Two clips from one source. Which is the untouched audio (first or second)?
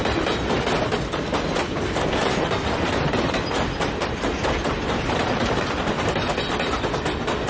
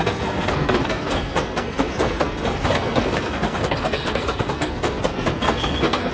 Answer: first